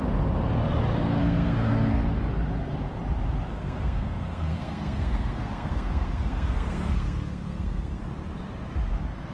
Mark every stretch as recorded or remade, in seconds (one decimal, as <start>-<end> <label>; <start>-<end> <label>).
0.0-1.2 recorded; 1.2-2.1 remade; 2.1-3.5 recorded; 3.5-8.0 remade; 8.0-9.3 recorded